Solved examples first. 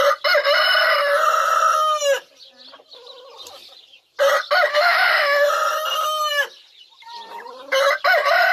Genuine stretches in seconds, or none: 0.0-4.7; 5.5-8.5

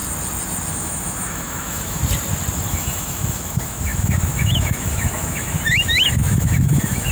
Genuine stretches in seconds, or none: 0.0-0.7; 2.0-2.7

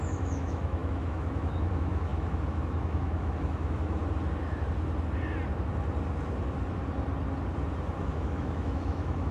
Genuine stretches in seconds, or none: 4.0-8.0

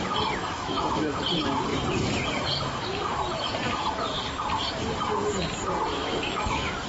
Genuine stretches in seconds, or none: 0.0-0.4; 1.1-5.9

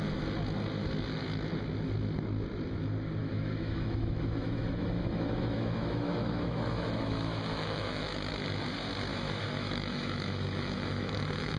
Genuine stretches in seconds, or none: 0.0-3.2; 8.3-9.1

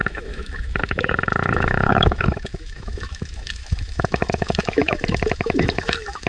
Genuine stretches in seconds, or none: none